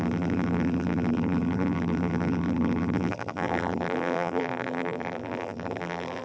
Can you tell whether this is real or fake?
fake